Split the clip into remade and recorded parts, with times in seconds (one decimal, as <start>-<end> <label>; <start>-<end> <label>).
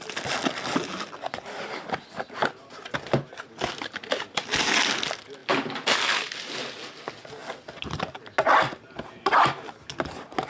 0.0-10.5 recorded